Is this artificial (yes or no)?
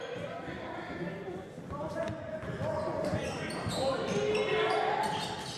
no